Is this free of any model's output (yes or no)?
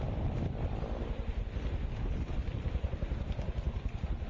yes